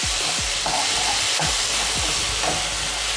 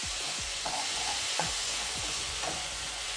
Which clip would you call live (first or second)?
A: first